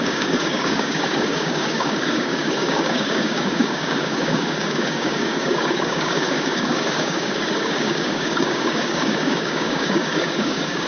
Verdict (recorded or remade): remade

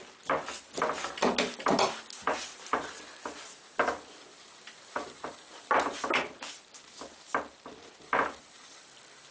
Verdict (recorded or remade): recorded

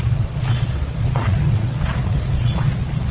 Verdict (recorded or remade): remade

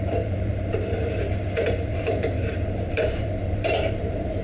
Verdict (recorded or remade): remade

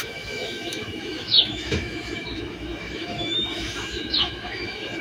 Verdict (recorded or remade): remade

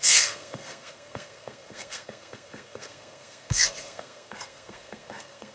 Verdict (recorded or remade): remade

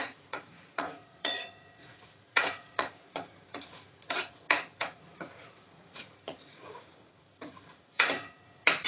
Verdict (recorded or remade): remade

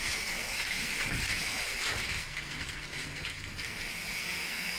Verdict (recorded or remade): remade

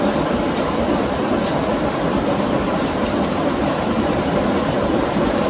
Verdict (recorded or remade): remade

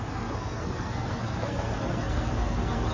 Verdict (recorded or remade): remade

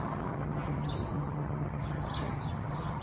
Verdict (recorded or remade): remade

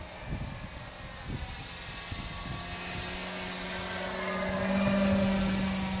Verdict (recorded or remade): recorded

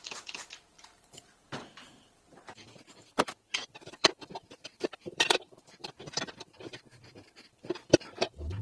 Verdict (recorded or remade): remade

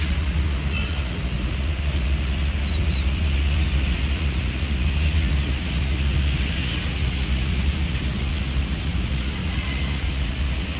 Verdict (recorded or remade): remade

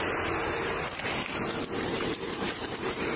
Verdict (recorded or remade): remade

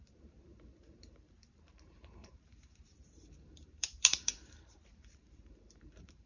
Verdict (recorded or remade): remade